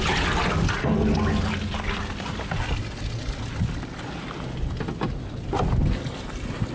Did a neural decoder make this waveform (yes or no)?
no